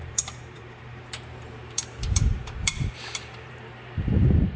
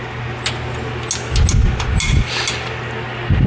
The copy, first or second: first